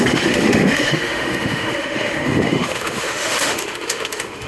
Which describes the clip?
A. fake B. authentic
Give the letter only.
A